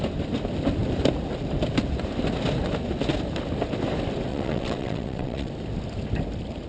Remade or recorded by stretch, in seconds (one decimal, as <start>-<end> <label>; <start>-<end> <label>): 0.0-4.3 recorded; 4.3-5.5 remade; 5.5-6.7 recorded